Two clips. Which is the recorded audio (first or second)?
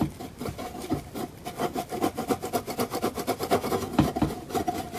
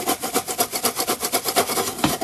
first